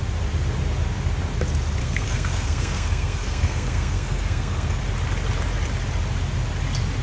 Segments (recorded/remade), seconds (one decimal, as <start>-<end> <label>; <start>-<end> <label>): 0.0-1.8 recorded; 1.8-4.8 remade; 4.8-7.0 recorded